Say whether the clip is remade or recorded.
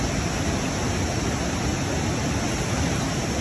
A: recorded